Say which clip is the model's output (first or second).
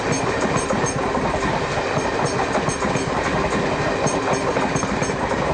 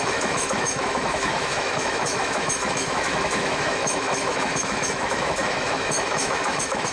second